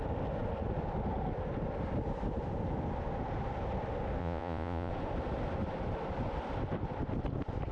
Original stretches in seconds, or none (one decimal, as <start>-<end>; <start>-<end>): 0.0-4.2; 4.9-7.7